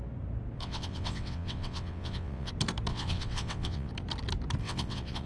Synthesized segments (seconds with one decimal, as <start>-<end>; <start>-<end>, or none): 0.6-2.5; 2.9-3.9; 4.6-5.3